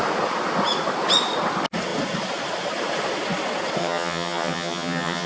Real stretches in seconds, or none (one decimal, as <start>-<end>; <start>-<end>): 0.0-3.8